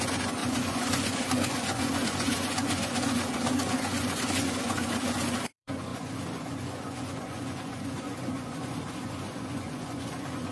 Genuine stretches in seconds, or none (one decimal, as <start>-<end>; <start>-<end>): none